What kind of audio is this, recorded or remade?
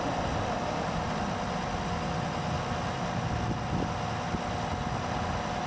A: recorded